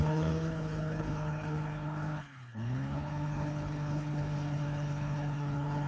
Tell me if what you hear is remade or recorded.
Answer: remade